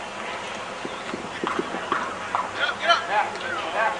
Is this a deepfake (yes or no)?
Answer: no